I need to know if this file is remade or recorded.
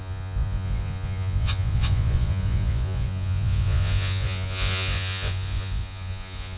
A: remade